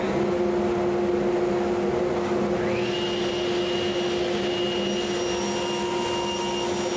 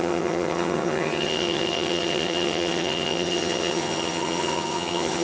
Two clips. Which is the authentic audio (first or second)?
first